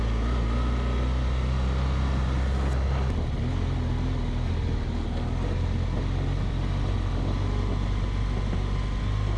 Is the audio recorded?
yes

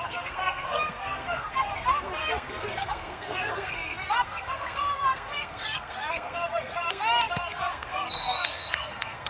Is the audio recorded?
no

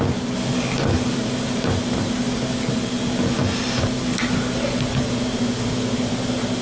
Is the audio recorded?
yes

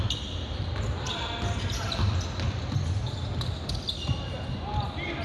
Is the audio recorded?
yes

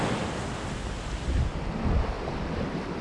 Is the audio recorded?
yes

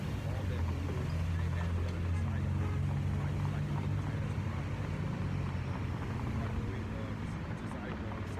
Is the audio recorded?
yes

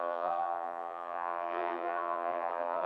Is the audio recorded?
no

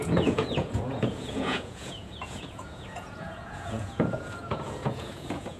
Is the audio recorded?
no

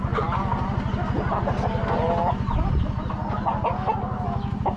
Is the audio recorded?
yes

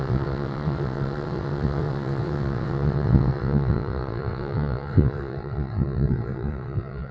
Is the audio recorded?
no